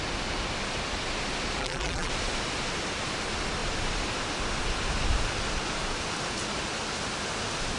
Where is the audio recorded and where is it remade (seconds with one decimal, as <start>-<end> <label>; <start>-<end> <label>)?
0.0-1.6 recorded; 1.6-2.1 remade; 2.1-7.8 recorded